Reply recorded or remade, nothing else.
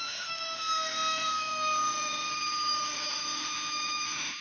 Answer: remade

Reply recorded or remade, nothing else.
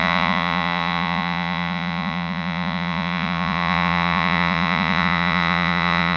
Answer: remade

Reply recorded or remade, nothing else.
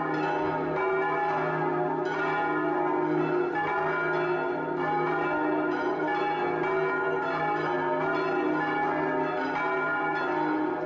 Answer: recorded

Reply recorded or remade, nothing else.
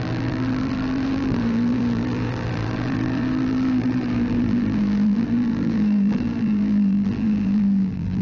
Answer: remade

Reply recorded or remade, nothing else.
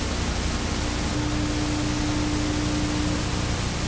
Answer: recorded